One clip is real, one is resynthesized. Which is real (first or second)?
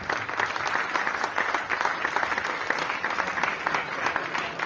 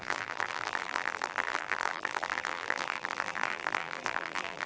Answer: first